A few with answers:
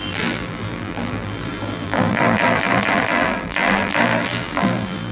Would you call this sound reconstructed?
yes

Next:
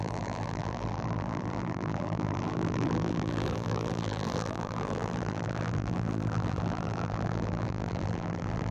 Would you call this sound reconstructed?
yes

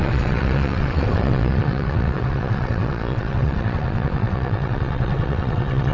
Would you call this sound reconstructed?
yes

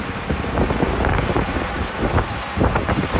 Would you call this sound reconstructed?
no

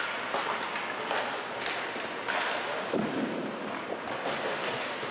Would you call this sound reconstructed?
no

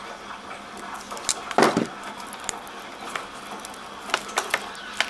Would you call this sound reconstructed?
no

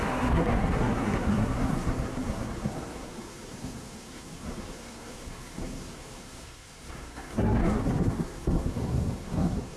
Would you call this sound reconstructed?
yes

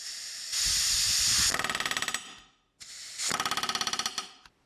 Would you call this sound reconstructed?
no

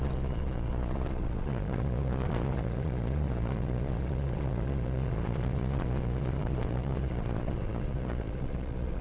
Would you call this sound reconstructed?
yes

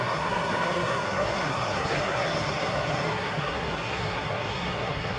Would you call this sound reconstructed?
yes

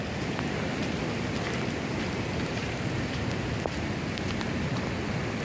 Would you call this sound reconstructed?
no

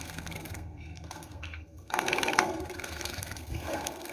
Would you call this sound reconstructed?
yes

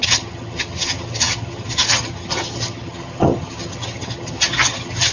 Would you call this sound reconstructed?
yes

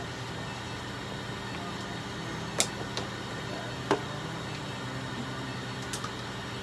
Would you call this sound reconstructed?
no